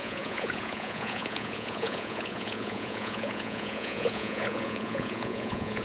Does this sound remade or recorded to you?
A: remade